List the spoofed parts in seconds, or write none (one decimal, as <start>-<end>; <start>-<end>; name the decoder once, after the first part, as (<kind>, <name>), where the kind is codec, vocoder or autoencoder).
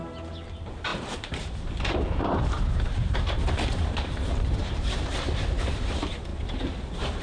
0.9-5.2 (vocoder, BigVGAN v2)